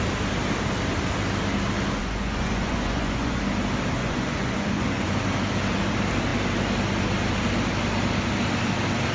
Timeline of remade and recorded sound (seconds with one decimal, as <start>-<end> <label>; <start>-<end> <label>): 0.0-2.0 recorded; 2.0-3.4 remade; 3.4-4.0 recorded; 4.0-5.2 remade; 5.2-9.1 recorded